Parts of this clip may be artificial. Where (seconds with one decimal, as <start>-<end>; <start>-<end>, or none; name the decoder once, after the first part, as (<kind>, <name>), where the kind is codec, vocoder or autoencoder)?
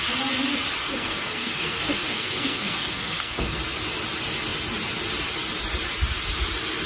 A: 0.8-3.6 (codec, SNAC)